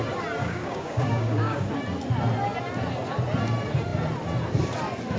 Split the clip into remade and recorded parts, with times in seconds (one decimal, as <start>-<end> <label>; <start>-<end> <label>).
0.0-0.4 recorded; 0.4-1.7 remade; 1.7-5.2 recorded